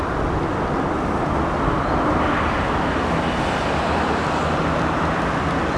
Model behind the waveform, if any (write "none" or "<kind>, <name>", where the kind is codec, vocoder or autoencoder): none